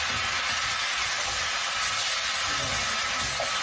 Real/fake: real